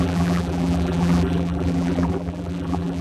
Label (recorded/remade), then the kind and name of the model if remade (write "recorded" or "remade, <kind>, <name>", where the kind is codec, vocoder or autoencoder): remade, vocoder, BigVGAN v2